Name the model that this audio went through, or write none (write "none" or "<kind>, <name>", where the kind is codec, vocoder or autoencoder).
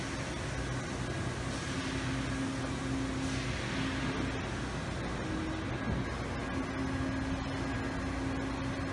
none